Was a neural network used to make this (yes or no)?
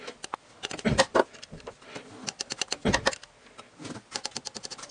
no